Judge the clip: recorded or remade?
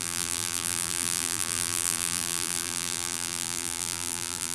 remade